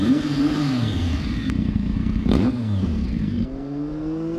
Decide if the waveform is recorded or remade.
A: remade